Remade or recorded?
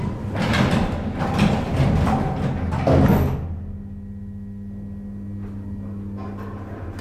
recorded